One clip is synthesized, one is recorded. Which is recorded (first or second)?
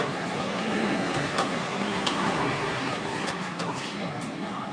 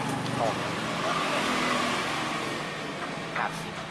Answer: second